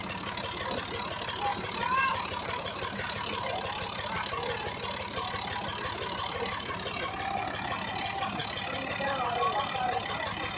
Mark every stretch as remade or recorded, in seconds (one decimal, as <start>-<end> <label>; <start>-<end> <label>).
0.0-1.5 recorded; 1.5-3.5 remade; 3.5-10.6 recorded